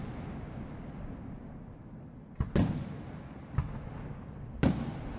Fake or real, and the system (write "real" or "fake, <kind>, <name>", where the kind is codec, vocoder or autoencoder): real